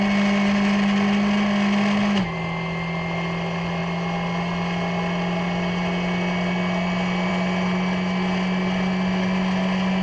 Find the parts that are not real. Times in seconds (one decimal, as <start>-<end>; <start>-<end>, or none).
none